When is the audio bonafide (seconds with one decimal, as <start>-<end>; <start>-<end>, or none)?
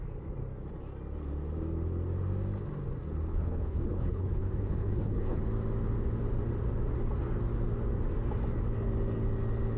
0.0-3.3; 5.4-9.8